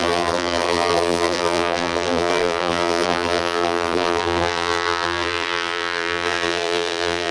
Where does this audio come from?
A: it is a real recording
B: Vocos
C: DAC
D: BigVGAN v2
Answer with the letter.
D